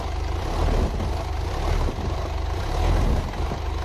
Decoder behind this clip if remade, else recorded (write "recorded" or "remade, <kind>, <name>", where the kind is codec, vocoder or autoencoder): recorded